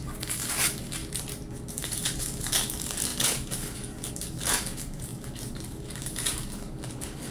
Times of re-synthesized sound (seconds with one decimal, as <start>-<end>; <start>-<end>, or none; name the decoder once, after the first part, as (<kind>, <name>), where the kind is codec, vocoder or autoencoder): 0.0-1.0 (codec, DAC); 1.5-7.3